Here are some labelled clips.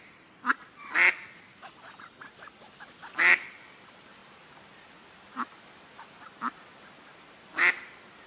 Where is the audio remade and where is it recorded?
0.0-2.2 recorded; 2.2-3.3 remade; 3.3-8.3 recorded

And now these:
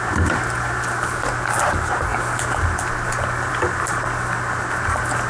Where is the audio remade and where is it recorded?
0.0-5.3 recorded

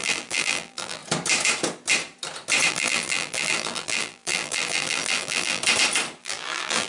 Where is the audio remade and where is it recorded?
0.0-1.0 remade; 1.0-2.7 recorded; 2.7-5.6 remade; 5.6-6.2 recorded; 6.2-6.9 remade

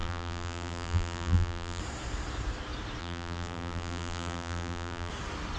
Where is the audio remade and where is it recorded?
0.0-1.8 remade; 1.8-3.0 recorded; 3.0-5.1 remade; 5.1-5.6 recorded

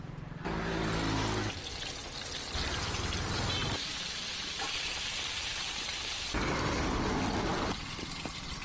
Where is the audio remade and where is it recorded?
0.0-3.6 recorded; 3.6-6.7 remade; 6.7-7.5 recorded; 7.5-8.2 remade; 8.2-8.6 recorded

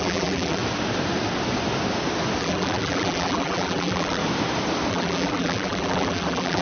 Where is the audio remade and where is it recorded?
0.0-0.6 remade; 0.6-2.4 recorded; 2.4-4.2 remade; 4.2-4.9 recorded; 4.9-6.6 remade

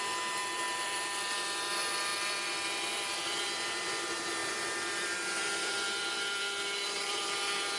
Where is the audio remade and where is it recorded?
0.0-7.8 remade

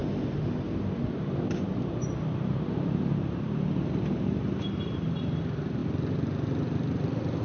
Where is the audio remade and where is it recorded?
0.0-5.8 remade; 5.8-7.4 recorded